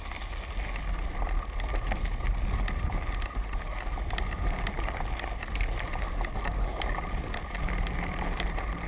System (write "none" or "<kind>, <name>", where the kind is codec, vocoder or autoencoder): none